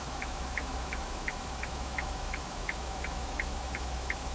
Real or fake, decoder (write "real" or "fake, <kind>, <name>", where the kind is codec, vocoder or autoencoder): fake, autoencoder, DAC-VAE